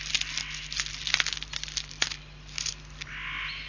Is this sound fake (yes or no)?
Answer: no